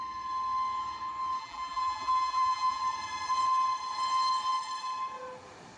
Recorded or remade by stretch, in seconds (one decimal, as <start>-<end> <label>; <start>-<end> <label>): 0.0-1.4 recorded; 1.4-2.8 remade; 2.8-5.8 recorded